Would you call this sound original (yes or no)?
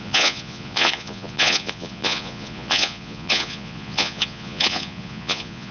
no